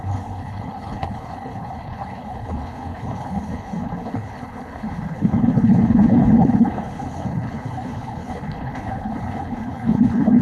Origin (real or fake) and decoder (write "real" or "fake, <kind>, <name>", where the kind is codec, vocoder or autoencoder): fake, codec, HILCodec